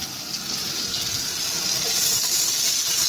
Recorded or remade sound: recorded